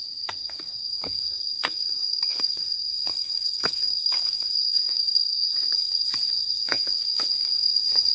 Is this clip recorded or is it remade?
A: remade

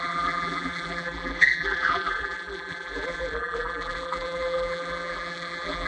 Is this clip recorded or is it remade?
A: remade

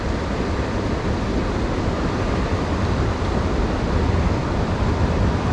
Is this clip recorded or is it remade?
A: remade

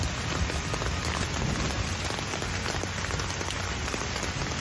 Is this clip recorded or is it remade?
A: recorded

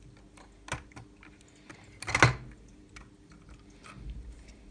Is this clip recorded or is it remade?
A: recorded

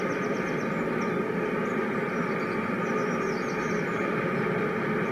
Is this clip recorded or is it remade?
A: recorded